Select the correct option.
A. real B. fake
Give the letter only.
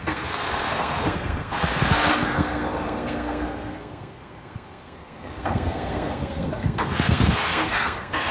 B